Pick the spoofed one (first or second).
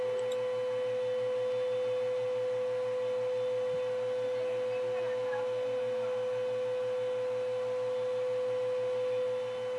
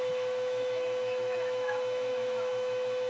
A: second